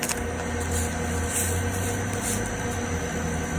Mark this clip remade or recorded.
recorded